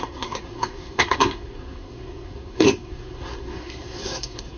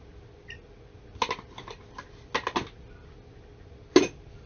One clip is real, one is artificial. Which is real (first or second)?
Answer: second